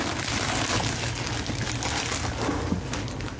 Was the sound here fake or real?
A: real